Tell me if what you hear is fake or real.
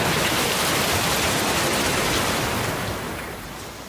real